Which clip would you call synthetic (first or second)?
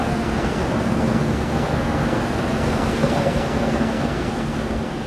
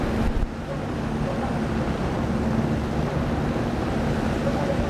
first